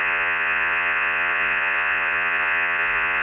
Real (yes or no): no